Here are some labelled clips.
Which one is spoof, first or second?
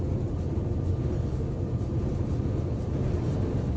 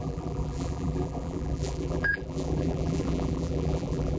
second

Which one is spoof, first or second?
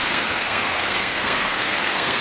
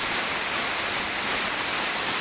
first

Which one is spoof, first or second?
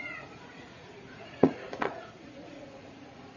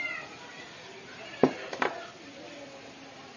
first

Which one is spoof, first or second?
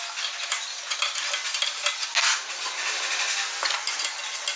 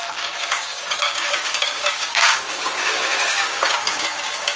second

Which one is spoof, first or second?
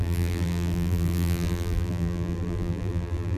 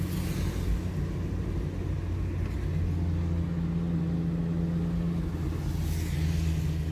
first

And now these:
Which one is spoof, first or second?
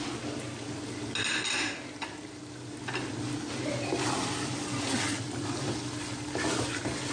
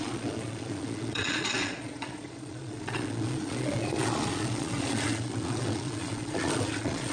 second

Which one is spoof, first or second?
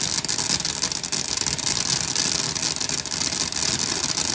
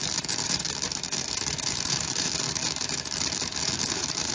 second